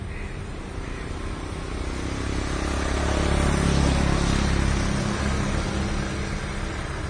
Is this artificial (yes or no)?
no